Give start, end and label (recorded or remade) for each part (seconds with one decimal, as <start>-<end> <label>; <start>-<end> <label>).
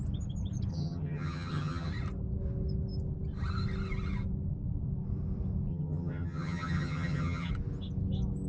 0.0-0.7 recorded; 0.7-1.9 remade; 1.9-5.7 recorded; 5.7-7.5 remade; 7.5-8.5 recorded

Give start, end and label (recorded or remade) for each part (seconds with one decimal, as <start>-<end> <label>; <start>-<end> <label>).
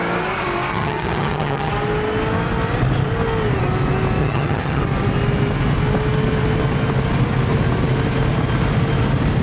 0.0-0.7 recorded; 0.7-1.7 remade; 1.7-4.2 recorded; 4.2-4.8 remade; 4.8-9.4 recorded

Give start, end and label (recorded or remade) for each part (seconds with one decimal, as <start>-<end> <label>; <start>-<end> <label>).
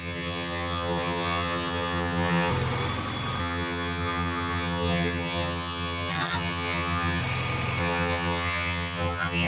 0.0-2.5 remade; 2.5-3.4 recorded; 3.4-7.2 remade; 7.2-7.8 recorded; 7.8-9.5 remade